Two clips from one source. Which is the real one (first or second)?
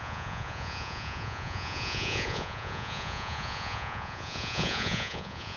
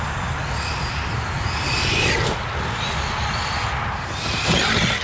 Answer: second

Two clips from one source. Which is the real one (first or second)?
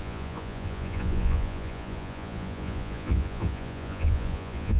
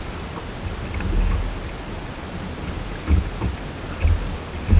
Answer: second